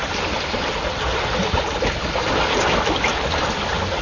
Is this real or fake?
real